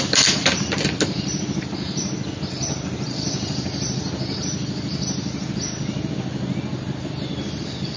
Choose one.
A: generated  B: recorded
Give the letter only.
B